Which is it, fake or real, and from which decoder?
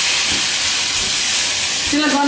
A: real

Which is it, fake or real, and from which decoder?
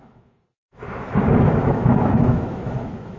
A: fake, autoencoder, DAC-VAE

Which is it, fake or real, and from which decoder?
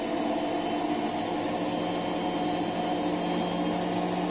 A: real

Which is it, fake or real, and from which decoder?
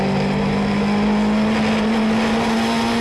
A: real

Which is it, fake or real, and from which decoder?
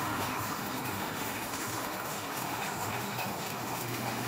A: fake, autoencoder, DAC-VAE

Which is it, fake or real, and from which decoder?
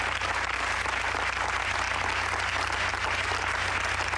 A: real